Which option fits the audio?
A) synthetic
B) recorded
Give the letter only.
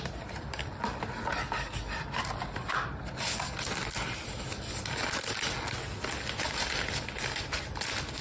B